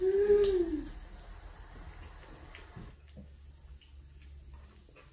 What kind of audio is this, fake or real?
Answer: real